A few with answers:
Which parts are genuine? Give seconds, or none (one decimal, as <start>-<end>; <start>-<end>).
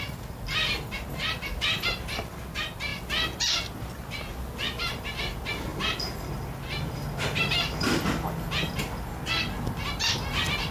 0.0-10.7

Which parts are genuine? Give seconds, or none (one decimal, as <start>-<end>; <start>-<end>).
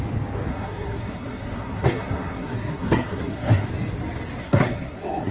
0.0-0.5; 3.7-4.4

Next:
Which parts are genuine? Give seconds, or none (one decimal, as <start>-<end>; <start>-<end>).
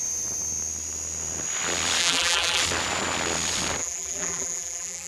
0.0-2.0; 2.6-3.8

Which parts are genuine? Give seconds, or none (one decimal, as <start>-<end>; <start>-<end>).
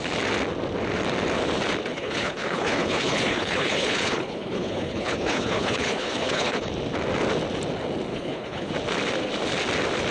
0.0-1.9; 6.7-8.1; 8.7-10.1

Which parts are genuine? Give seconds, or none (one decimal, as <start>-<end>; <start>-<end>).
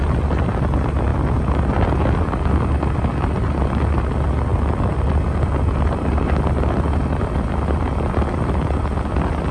0.0-9.5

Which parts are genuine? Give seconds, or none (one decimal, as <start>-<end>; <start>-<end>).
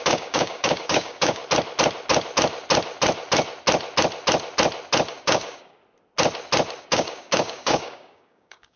1.4-5.1; 5.8-6.8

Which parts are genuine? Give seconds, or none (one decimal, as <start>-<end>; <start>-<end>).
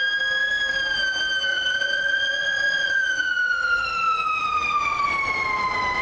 0.0-1.5; 5.1-6.0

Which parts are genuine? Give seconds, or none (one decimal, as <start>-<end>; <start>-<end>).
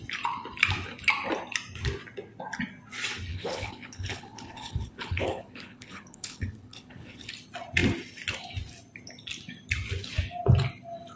0.0-3.3; 7.3-11.2